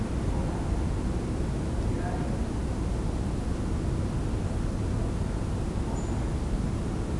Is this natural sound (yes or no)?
yes